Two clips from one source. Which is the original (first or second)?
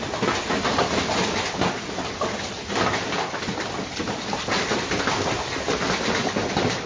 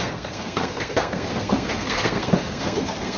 first